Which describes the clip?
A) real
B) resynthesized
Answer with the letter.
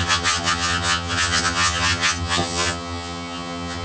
B